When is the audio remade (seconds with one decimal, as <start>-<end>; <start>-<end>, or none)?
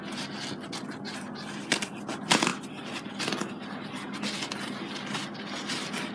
none